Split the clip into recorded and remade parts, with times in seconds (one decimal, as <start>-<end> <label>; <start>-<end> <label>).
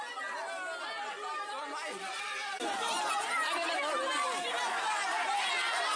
0.0-6.0 recorded